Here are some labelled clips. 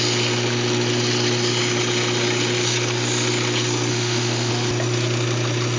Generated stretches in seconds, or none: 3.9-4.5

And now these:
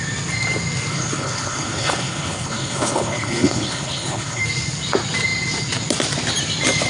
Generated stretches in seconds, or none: 0.9-4.4